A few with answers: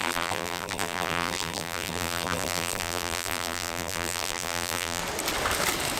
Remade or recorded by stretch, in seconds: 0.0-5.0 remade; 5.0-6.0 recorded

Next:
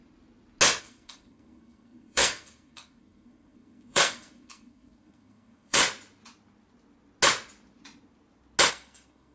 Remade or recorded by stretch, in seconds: 0.0-0.8 recorded; 0.8-5.8 remade; 5.8-8.7 recorded; 8.7-9.3 remade